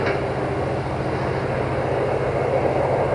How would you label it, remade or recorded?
recorded